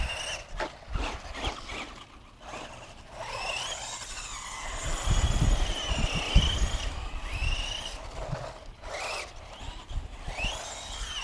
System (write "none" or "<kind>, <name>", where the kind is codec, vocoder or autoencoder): none